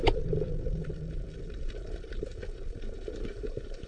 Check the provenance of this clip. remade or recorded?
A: remade